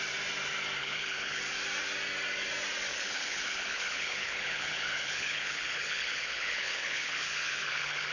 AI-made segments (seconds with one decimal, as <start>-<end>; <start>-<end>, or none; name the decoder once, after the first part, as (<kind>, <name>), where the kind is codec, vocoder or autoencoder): 0.8-1.4 (codec, HILCodec); 2.9-8.1